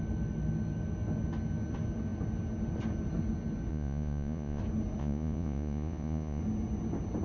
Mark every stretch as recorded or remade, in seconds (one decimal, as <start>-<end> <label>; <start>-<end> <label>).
0.0-3.7 recorded; 3.7-4.6 remade; 4.6-5.0 recorded; 5.0-6.4 remade; 6.4-7.2 recorded